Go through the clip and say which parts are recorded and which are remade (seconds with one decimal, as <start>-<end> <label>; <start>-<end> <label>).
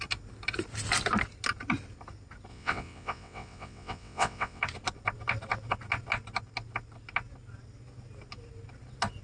0.0-2.5 recorded; 2.5-4.6 remade; 4.6-9.2 recorded